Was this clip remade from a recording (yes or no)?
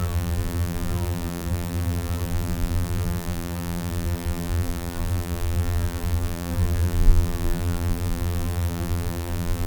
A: yes